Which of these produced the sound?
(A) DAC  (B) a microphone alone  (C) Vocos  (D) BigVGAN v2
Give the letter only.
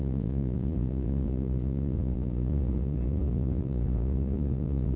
C